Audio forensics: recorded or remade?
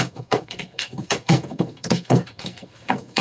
remade